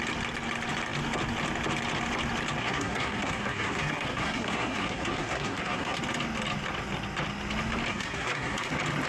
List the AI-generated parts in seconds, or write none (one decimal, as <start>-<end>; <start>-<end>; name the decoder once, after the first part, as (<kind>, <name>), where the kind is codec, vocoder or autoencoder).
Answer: 2.6-6.0 (codec, SNAC); 7.9-8.7